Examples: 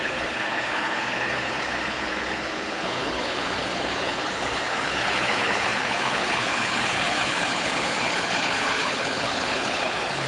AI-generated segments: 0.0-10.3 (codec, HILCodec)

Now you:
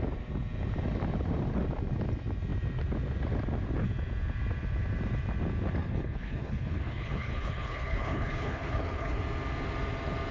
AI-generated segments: 5.8-9.2 (codec, HILCodec)